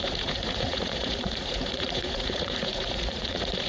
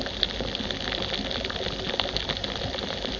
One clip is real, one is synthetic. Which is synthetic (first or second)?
first